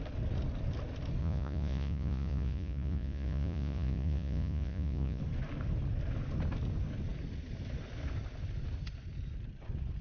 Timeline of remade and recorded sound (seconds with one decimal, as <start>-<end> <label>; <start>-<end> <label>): 0.0-1.2 recorded; 1.2-5.2 remade; 5.2-10.0 recorded